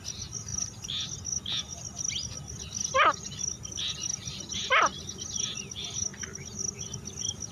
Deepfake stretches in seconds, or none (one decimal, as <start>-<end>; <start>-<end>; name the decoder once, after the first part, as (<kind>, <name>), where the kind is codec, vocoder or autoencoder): none